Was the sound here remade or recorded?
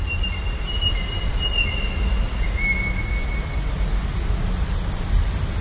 recorded